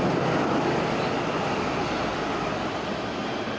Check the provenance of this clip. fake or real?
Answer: real